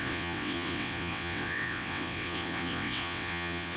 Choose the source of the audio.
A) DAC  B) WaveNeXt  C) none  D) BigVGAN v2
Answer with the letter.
B